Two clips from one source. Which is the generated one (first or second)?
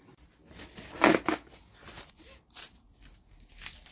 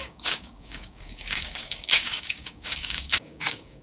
second